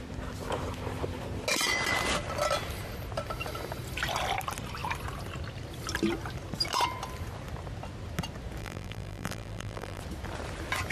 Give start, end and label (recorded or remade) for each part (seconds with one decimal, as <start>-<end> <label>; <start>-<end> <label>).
0.0-8.6 recorded; 8.6-10.0 remade; 10.0-10.9 recorded